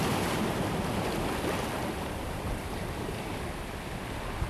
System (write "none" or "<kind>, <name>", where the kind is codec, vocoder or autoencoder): none